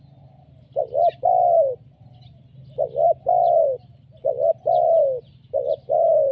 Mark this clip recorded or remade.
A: recorded